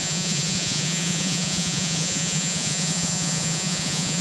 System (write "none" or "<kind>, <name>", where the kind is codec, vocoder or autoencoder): vocoder, Vocos